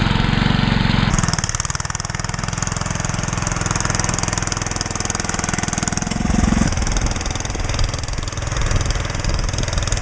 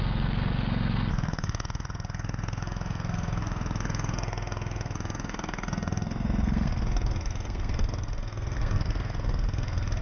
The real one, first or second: first